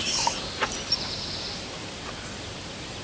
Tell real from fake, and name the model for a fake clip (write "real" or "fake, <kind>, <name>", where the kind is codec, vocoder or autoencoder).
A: real